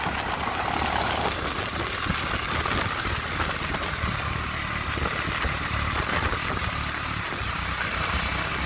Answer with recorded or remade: recorded